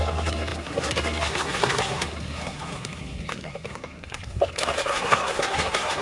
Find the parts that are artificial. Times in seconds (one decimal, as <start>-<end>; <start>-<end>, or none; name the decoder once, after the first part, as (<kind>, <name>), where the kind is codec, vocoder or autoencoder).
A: 0.0-6.0 (codec, SNAC)